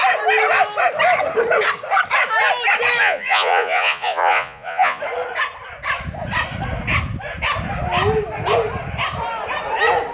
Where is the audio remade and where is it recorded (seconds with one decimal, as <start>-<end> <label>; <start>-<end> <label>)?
0.0-3.0 recorded; 3.0-5.0 remade; 5.0-10.1 recorded